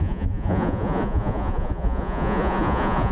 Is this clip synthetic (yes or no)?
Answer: yes